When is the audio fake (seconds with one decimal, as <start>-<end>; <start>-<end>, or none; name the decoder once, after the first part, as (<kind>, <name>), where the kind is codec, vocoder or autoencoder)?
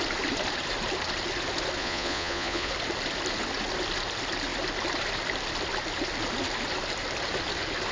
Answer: 1.8-2.7 (vocoder, Vocos)